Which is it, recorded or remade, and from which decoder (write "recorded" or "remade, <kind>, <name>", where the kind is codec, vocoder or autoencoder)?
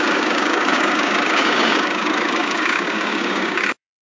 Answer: remade, codec, DAC